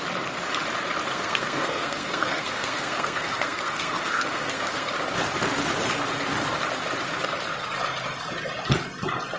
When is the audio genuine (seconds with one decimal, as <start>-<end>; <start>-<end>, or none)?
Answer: 0.0-1.1; 4.9-9.4